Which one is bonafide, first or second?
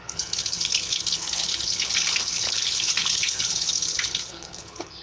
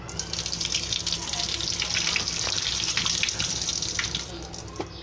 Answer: second